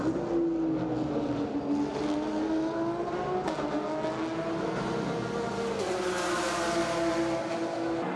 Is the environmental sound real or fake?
real